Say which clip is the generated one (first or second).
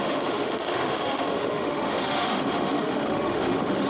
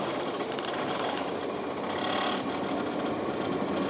first